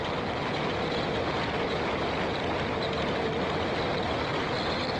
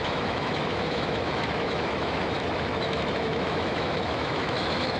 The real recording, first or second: first